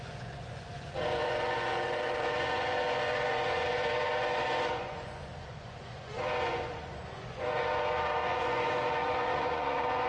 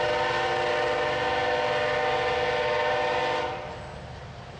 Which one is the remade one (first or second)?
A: first